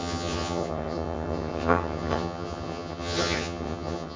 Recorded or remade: remade